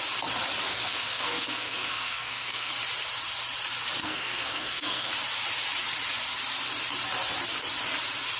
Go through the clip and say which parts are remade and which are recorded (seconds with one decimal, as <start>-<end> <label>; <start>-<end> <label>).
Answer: 0.0-0.7 recorded; 0.7-2.7 remade; 2.7-4.0 recorded; 4.0-5.1 remade; 5.1-8.4 recorded

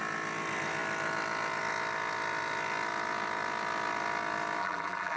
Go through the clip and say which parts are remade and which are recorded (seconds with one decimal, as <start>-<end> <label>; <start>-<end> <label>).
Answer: 0.0-4.6 recorded; 4.6-5.2 remade

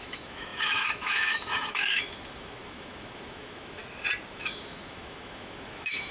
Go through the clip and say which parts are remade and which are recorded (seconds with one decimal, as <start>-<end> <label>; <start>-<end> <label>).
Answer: 0.0-3.8 remade; 3.8-4.3 recorded; 4.3-6.1 remade

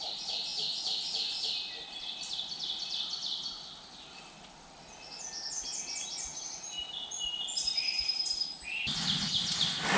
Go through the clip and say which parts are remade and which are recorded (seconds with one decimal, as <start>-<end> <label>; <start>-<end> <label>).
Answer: 0.0-10.0 recorded